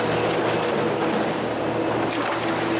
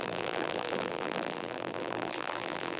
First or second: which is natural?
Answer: first